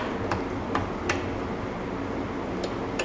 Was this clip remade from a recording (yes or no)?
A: no